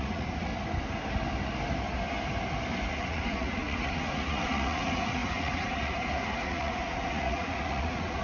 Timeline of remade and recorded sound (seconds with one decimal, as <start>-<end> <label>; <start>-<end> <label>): 0.0-0.5 remade; 0.5-2.9 recorded; 2.9-8.2 remade